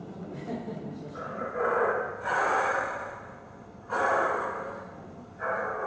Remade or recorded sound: remade